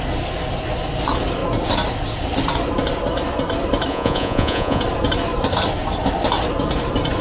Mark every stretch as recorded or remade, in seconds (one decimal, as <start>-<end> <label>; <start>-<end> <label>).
0.0-3.9 recorded; 3.9-4.8 remade; 4.8-7.2 recorded